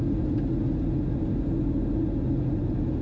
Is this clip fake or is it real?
real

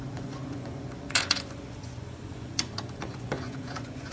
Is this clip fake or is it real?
fake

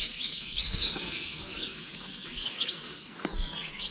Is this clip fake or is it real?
fake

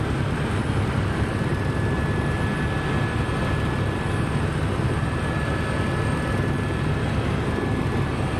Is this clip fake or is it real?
real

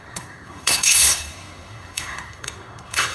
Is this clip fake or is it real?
fake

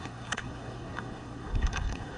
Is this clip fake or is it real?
fake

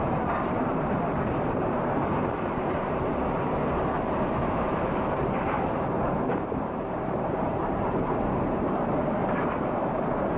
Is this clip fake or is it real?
fake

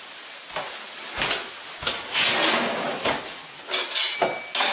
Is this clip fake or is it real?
real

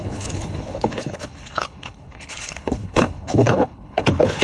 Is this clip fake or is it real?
fake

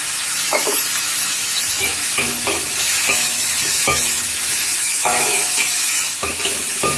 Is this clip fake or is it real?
fake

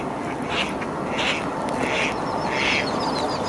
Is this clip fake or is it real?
real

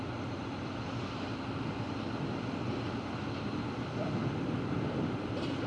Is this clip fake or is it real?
real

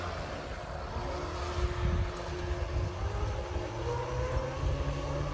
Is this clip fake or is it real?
real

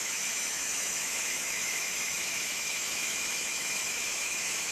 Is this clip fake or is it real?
fake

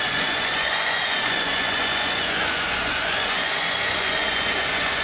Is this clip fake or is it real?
fake